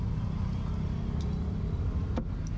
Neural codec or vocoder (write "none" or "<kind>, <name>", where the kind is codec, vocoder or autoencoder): none